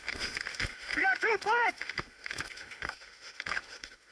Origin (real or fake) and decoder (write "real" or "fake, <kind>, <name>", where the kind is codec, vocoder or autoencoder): fake, autoencoder, DAC-VAE